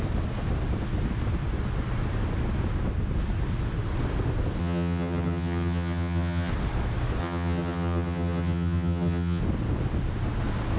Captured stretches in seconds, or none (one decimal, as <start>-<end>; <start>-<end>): 0.0-4.6; 6.5-7.2; 9.4-10.8